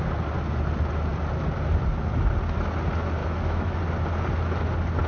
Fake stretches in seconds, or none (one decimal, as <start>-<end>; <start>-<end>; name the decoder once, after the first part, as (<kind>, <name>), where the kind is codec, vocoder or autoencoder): 3.2-3.8 (autoencoder, DAC-VAE)